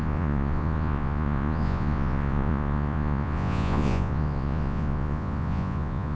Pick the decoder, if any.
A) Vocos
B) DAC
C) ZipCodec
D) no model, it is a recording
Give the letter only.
A